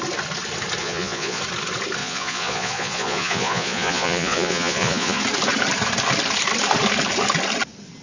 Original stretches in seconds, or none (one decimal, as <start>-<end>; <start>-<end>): 0.0-0.8; 1.4-2.0; 5.2-8.0

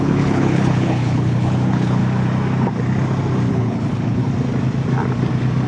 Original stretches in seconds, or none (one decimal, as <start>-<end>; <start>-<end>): 2.0-3.5; 4.2-5.7

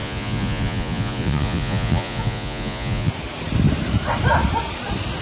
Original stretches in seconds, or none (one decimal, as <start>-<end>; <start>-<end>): 3.1-5.2